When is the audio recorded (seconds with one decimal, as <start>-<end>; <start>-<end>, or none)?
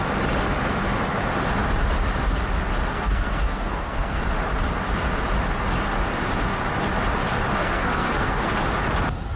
0.0-2.9; 4.2-7.6; 8.5-9.4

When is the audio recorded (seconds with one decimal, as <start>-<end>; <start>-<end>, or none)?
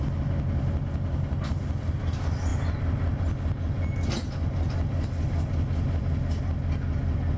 0.0-7.4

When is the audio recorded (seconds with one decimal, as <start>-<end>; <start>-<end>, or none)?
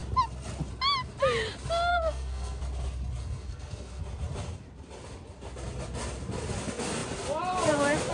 0.0-1.9; 2.6-3.2; 4.0-8.1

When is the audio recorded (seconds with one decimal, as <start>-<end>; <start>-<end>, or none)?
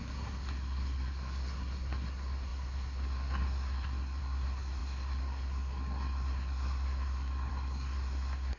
none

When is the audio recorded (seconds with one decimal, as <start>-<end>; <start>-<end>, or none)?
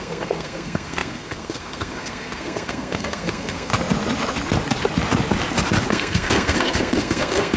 3.7-5.9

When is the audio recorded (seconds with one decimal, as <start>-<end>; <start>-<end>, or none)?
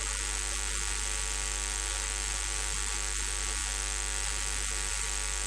0.0-5.5